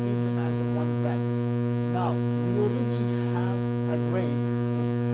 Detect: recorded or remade remade